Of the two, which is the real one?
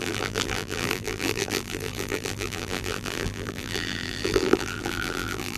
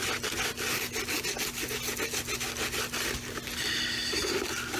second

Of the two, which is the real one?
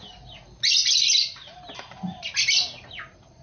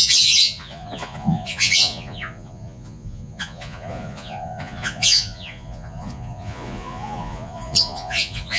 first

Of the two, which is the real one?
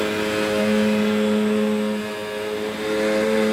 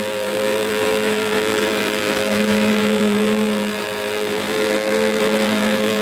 first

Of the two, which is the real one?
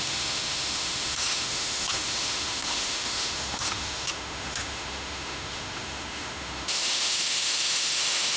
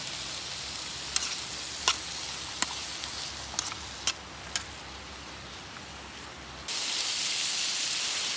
second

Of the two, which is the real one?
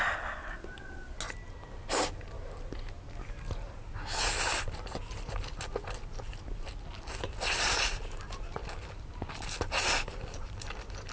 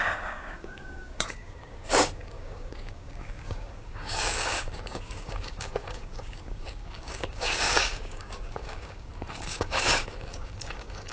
first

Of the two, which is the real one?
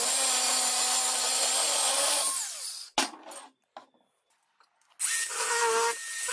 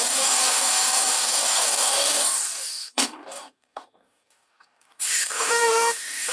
first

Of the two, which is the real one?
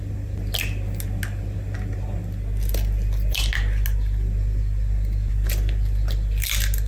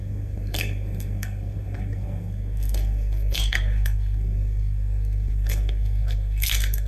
first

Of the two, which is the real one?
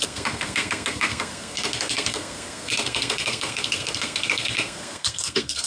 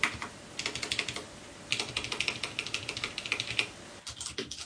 second